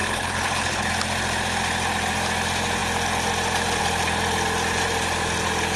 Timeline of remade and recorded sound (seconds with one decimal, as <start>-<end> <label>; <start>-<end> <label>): 0.0-0.9 remade; 0.9-5.8 recorded